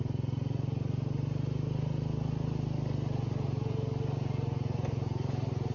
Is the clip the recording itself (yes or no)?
yes